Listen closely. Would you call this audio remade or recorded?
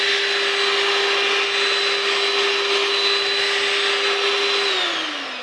recorded